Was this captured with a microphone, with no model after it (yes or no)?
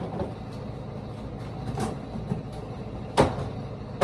yes